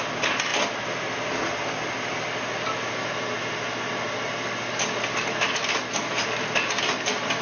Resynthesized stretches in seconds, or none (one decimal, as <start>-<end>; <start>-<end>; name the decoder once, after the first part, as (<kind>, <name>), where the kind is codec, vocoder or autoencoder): none